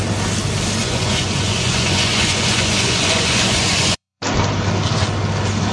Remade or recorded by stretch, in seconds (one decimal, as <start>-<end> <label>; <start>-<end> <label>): 0.0-0.8 recorded; 0.8-4.2 remade; 4.2-5.7 recorded

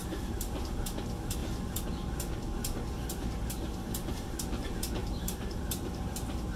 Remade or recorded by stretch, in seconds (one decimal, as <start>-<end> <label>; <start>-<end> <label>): 0.0-0.8 remade; 0.8-5.0 recorded; 5.0-6.6 remade

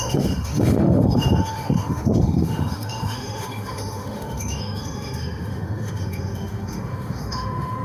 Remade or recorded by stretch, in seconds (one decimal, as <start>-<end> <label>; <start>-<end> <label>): 0.0-7.8 remade

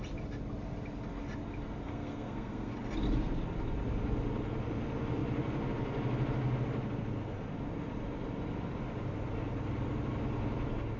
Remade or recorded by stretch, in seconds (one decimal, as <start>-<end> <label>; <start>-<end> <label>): 0.0-1.8 recorded; 1.8-2.7 remade; 2.7-11.0 recorded